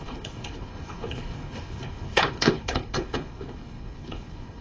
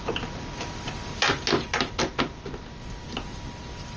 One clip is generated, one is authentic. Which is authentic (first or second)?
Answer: second